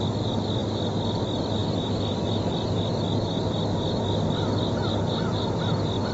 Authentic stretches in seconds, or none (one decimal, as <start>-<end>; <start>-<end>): 0.0-6.1